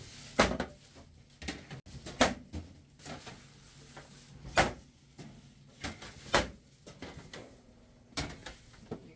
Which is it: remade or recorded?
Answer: recorded